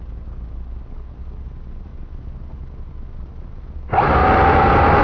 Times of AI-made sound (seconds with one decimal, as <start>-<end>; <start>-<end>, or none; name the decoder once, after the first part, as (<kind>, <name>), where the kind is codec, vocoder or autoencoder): none